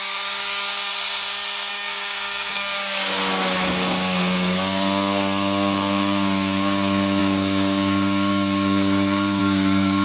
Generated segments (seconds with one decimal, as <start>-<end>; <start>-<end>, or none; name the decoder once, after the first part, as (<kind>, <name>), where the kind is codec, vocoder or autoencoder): 0.0-0.9 (codec, DAC); 1.7-10.0